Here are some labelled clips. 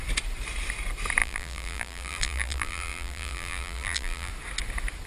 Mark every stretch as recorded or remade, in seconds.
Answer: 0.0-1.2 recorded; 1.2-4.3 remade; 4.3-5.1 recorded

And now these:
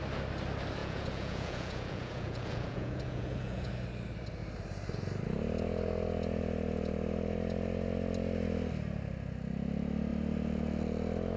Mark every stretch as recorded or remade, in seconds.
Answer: 0.0-0.8 recorded; 0.8-3.7 remade; 3.7-11.4 recorded

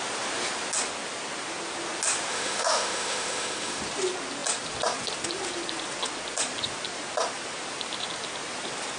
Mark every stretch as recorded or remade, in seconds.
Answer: 0.0-2.3 recorded; 2.3-3.8 remade; 3.8-9.0 recorded

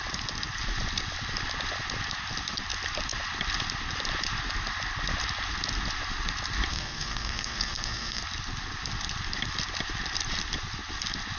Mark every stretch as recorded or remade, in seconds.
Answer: 0.0-6.7 recorded; 6.7-8.2 remade; 8.2-11.4 recorded